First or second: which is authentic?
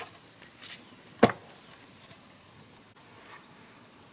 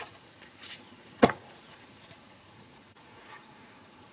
first